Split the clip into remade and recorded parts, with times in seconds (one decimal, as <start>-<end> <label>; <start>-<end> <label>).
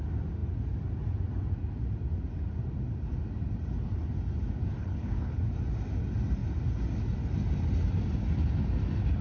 0.0-4.8 recorded; 4.8-5.4 remade; 5.4-9.2 recorded